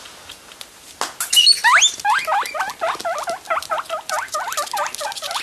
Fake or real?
real